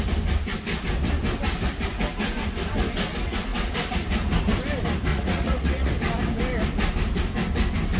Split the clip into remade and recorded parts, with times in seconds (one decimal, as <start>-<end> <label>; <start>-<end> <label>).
0.0-5.1 recorded; 5.1-5.9 remade; 5.9-8.0 recorded